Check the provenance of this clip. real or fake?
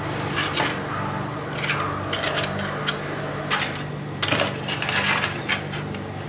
real